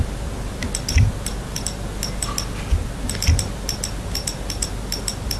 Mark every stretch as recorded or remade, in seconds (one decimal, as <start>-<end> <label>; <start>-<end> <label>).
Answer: 0.0-5.4 recorded